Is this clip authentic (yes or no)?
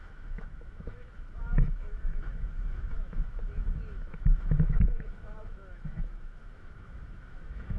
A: no